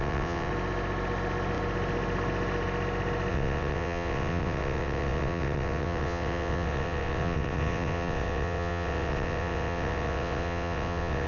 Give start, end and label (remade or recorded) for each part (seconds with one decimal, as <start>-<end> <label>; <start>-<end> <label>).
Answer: 0.0-0.5 remade; 0.5-3.3 recorded; 3.3-11.3 remade